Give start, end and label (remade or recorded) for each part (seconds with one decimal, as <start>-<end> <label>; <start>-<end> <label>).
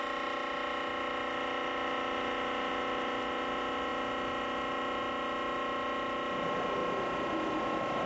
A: 0.0-8.1 recorded